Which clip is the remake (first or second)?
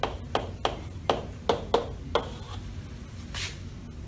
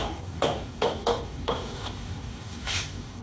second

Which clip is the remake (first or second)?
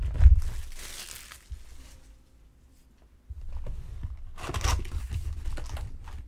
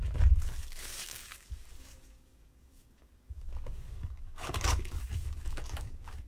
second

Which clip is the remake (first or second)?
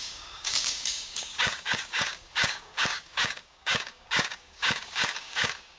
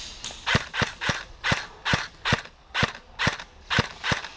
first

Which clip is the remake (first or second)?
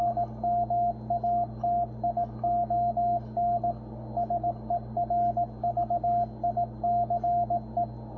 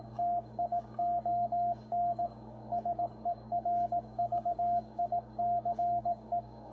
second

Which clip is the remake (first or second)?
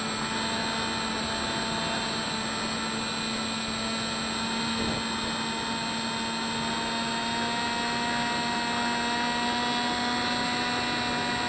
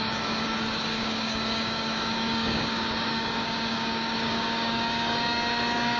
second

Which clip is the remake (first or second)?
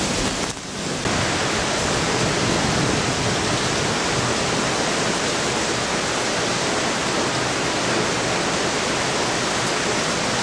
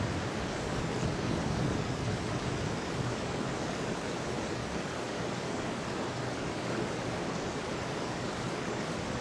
second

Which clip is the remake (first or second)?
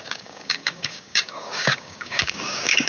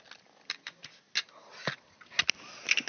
first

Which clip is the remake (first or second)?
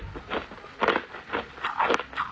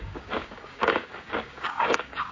second